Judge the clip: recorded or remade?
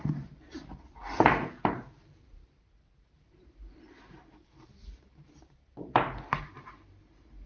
remade